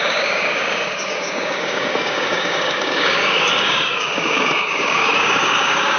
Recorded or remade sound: remade